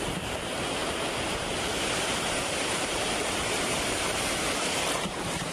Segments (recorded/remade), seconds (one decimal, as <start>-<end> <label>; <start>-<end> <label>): 0.0-0.8 remade; 0.8-1.8 recorded; 1.8-5.5 remade